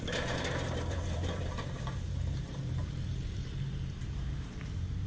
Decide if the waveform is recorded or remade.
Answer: remade